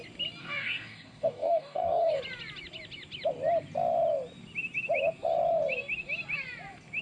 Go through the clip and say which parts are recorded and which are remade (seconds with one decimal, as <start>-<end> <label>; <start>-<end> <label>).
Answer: 0.0-0.4 recorded; 0.4-2.2 remade; 2.2-7.0 recorded